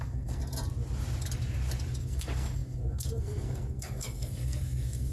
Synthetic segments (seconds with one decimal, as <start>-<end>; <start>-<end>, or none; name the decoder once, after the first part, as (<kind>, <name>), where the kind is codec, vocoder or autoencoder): 0.0-0.4 (codec, SNAC); 2.0-5.1